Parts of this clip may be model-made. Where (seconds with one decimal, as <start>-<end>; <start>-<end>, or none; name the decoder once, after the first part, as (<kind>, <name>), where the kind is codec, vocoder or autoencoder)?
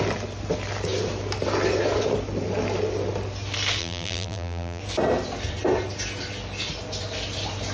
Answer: 3.8-4.8 (vocoder, BigVGAN v2)